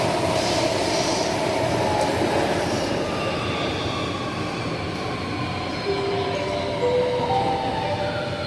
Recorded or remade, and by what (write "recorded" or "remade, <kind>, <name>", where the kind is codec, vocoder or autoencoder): remade, vocoder, BigVGAN v2